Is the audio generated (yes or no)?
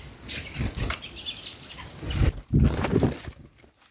no